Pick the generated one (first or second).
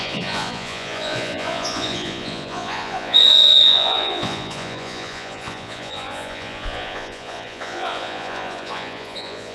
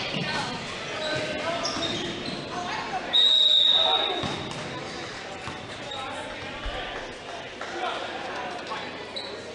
first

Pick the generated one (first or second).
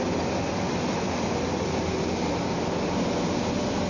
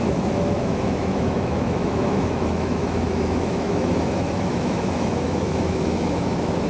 second